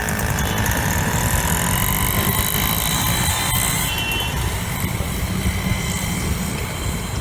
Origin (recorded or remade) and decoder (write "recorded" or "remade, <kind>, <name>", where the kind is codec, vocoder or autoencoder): recorded